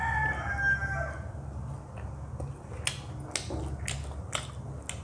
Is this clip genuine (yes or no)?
yes